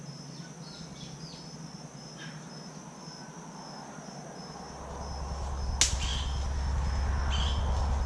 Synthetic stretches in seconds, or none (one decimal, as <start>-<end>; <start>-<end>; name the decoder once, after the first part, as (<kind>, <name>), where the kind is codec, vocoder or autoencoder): none